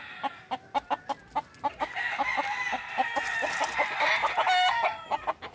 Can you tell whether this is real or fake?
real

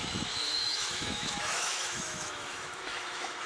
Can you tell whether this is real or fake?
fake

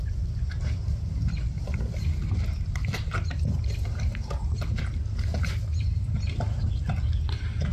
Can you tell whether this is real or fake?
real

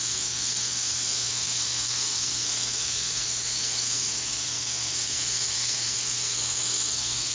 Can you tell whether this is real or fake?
fake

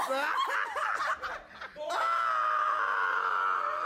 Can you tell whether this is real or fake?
real